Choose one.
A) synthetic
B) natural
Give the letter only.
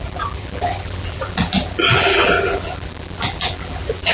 A